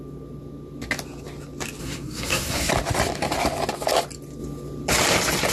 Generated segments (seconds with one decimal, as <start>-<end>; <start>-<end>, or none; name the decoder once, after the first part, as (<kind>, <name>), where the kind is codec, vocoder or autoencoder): 1.8-2.7 (codec, SNAC)